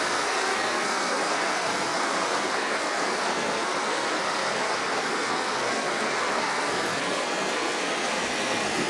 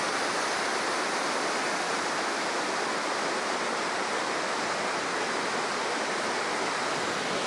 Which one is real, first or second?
second